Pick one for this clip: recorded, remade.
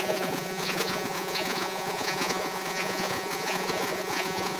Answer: remade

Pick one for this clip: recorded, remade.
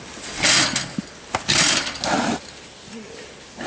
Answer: recorded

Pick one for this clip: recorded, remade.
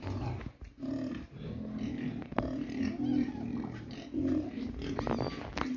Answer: recorded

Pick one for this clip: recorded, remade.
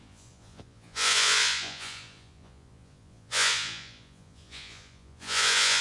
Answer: remade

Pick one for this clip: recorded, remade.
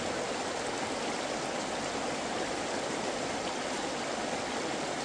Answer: recorded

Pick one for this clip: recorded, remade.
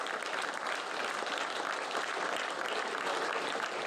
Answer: recorded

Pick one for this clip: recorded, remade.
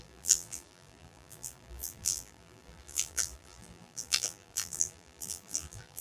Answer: remade